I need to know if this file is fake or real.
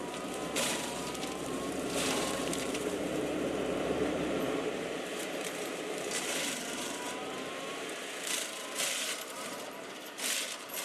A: fake